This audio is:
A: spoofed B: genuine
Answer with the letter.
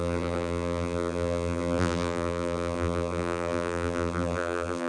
A